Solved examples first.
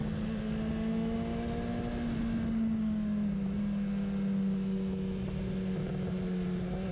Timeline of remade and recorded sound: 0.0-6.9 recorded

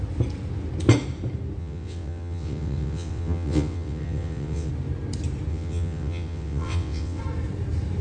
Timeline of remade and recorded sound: 0.0-1.6 recorded; 1.6-4.7 remade; 4.7-5.5 recorded; 5.5-7.2 remade; 7.2-8.0 recorded

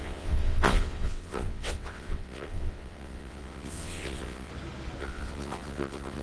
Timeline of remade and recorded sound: 0.0-4.5 remade; 4.5-5.0 recorded; 5.0-6.2 remade

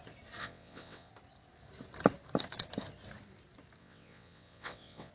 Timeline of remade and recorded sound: 0.0-0.4 recorded; 0.4-1.1 remade; 1.1-3.8 recorded; 3.8-5.1 remade